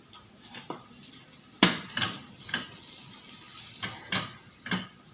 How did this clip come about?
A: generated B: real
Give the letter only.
B